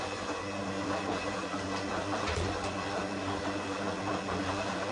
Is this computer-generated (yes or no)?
yes